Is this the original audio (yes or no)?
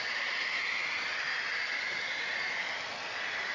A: yes